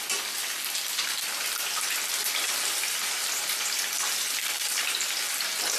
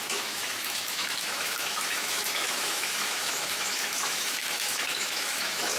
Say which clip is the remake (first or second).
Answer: second